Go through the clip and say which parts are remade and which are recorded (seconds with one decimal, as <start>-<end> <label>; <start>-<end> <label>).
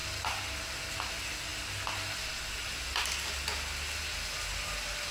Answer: 0.0-5.1 recorded